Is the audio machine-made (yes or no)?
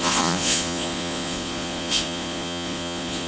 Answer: yes